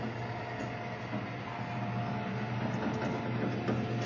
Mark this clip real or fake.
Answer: real